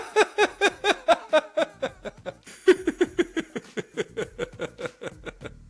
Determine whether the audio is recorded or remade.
recorded